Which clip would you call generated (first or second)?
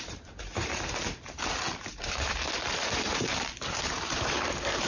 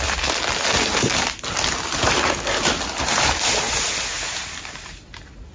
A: first